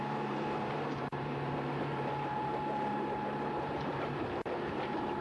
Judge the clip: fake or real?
fake